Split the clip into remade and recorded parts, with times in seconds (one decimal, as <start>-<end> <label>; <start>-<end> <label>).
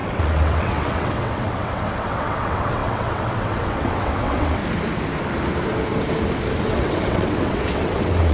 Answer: 0.0-4.6 remade; 4.6-6.6 recorded; 6.6-8.3 remade